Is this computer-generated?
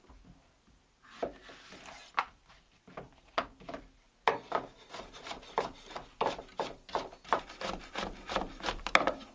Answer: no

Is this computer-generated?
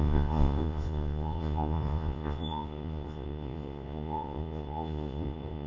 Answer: yes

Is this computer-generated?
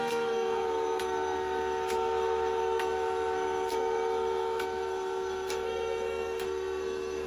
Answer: yes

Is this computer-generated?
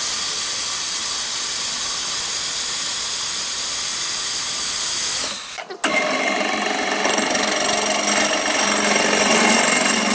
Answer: no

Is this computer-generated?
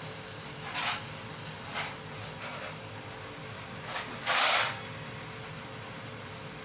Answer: no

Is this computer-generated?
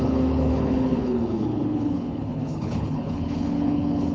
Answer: yes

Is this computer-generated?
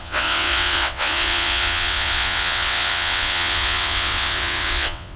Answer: yes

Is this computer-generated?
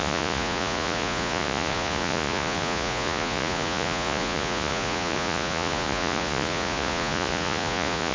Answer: yes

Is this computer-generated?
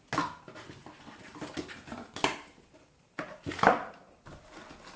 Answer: no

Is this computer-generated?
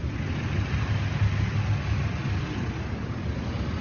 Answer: no